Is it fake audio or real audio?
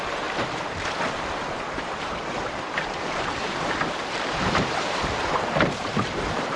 fake